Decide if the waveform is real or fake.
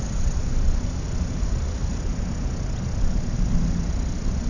real